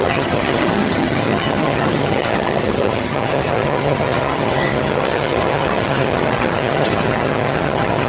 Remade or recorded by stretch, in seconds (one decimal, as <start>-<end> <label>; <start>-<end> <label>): 0.0-8.1 remade